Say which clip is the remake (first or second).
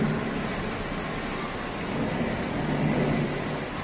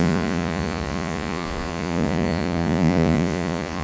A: second